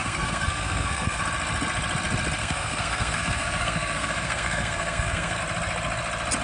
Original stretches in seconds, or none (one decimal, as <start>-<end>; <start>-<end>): 1.2-2.4; 5.4-6.4